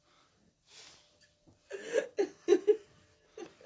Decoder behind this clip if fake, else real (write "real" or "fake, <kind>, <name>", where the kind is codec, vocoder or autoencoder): real